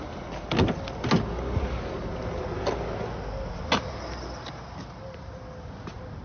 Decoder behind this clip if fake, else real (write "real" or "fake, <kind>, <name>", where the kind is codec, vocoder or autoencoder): real